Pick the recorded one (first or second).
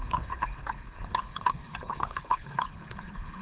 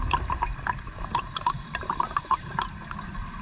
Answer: second